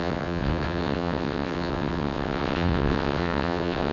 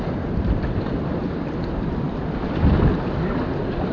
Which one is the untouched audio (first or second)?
second